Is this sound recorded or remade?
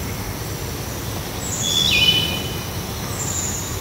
recorded